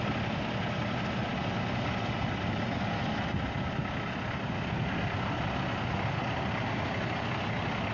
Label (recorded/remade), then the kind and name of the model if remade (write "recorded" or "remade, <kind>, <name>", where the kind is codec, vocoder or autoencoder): recorded